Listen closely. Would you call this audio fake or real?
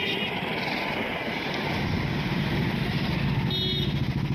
real